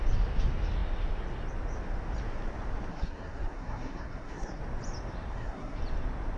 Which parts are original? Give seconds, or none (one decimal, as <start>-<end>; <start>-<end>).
0.0-2.9; 4.6-5.3; 5.8-6.4